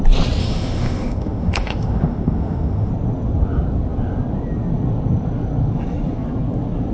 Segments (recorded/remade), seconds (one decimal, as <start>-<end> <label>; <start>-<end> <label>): 0.0-0.4 recorded; 0.4-2.9 remade; 2.9-6.9 recorded